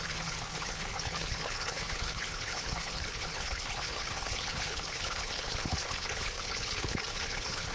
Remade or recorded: remade